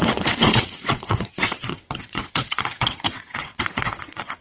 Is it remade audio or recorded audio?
remade